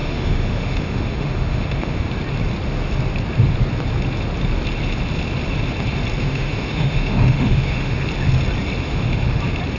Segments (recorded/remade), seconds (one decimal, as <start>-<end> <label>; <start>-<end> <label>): 0.0-2.1 remade; 2.1-6.2 recorded; 6.2-8.1 remade; 8.1-8.8 recorded; 8.8-9.4 remade; 9.4-9.8 recorded